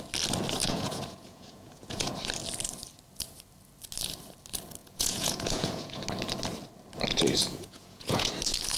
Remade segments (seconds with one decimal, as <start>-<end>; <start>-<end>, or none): 0.6-2.1; 4.8-6.0; 7.1-8.3